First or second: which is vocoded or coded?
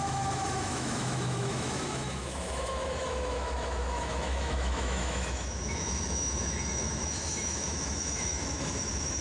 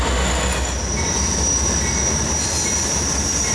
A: first